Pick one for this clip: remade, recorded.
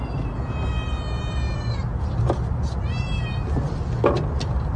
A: recorded